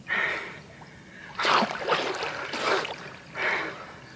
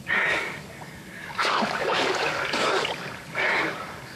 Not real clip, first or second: second